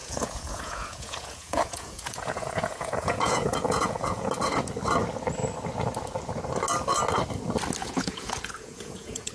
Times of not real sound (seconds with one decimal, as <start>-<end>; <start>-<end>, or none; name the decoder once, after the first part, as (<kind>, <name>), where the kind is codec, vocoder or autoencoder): 0.0-4.3 (vocoder, Vocos); 7.8-9.3